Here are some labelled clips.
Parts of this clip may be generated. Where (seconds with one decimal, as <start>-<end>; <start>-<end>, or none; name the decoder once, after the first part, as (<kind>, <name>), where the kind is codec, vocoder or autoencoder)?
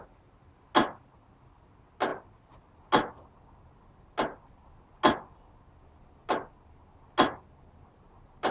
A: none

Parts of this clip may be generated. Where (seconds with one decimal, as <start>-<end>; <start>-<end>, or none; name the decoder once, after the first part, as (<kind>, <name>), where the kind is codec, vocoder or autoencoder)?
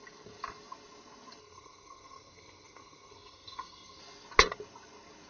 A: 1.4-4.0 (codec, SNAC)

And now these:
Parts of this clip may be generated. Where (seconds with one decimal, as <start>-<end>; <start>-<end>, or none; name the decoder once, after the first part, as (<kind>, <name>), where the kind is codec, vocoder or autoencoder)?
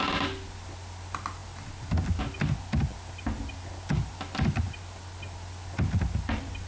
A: none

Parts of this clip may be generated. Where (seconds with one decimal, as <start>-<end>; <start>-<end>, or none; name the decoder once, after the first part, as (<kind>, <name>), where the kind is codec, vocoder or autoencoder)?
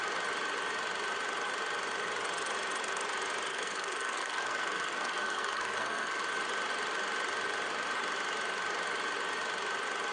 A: 3.5-6.2 (codec, SNAC)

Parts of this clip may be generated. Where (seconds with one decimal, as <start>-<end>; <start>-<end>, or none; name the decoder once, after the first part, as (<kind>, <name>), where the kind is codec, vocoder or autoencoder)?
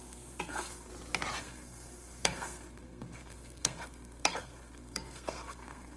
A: 0.0-0.9 (codec, SNAC); 1.4-6.0